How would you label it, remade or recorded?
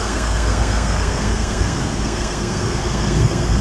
remade